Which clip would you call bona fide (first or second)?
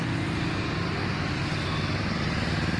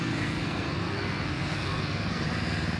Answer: first